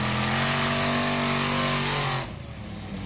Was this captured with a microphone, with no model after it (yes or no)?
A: yes